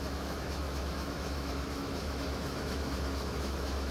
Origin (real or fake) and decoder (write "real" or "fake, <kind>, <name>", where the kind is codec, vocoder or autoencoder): fake, autoencoder, DAC-VAE